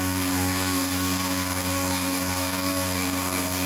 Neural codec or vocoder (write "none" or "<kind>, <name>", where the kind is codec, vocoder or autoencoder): codec, DAC